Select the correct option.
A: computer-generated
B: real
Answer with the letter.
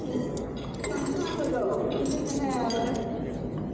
B